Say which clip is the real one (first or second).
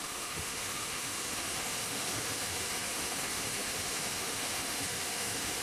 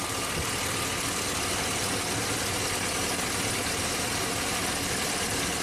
second